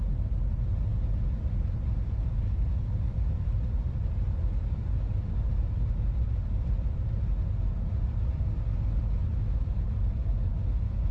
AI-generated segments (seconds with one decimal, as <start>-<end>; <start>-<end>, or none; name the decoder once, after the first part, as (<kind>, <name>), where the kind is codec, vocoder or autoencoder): none